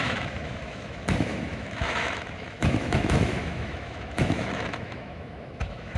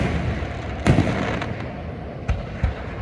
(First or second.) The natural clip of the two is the second